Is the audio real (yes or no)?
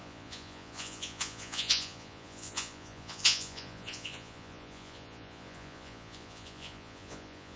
no